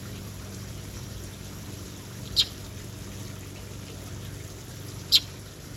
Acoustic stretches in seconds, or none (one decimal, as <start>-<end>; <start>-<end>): 2.6-4.7